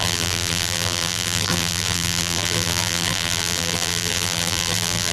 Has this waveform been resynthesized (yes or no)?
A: yes